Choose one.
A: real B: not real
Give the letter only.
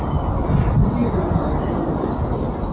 A